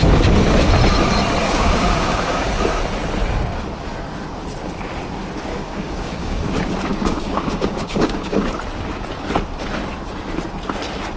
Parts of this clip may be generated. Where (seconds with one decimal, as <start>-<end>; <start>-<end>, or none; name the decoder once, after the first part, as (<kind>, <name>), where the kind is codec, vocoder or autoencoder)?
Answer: 1.4-2.5 (codec, DAC); 5.5-6.4; 6.9-8.5